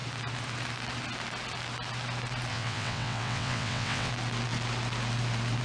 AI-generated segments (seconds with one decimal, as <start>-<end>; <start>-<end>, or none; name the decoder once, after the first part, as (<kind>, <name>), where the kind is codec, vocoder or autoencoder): 2.5-4.1 (vocoder, WaveNeXt)